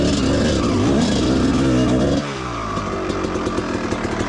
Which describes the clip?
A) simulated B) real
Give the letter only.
B